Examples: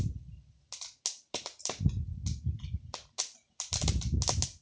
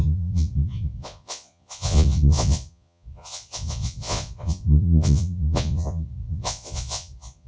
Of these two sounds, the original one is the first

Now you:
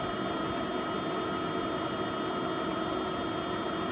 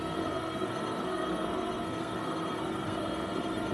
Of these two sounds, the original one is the first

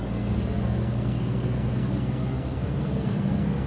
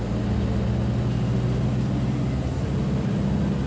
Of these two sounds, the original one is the second